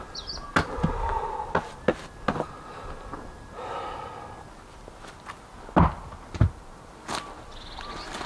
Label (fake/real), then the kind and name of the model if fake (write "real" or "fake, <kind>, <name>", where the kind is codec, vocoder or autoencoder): real